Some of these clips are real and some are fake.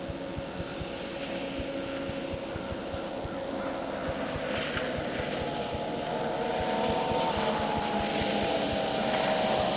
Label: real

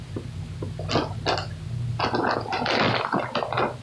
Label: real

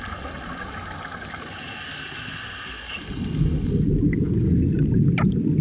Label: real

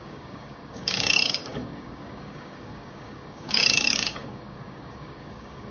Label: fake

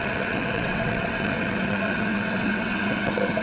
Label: fake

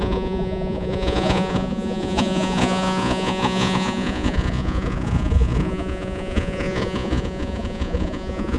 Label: fake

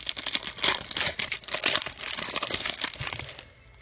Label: real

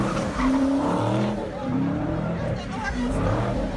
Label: fake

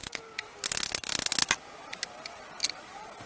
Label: real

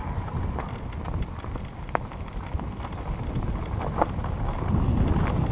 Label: real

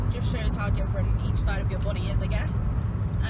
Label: real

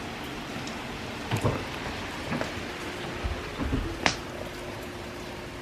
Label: real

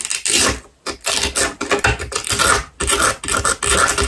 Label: real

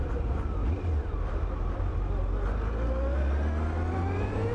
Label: real